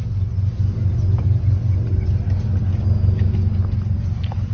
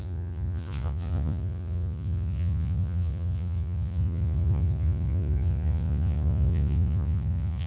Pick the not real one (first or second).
second